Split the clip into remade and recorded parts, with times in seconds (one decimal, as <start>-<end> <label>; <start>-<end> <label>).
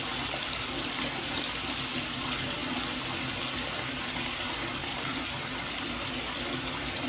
0.0-7.1 recorded